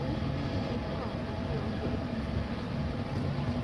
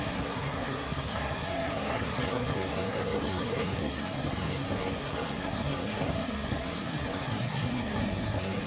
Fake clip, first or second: second